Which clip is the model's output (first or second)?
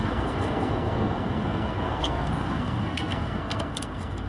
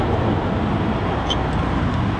first